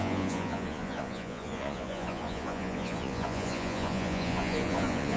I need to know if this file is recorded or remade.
remade